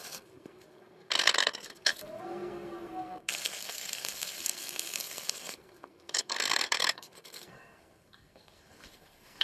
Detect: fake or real fake